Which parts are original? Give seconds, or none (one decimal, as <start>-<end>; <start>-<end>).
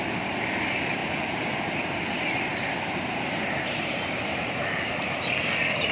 0.0-1.0; 1.7-2.5; 5.5-5.9